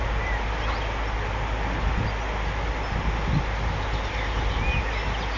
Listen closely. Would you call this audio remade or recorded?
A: recorded